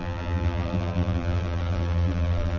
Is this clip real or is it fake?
fake